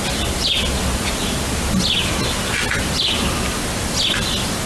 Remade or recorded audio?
recorded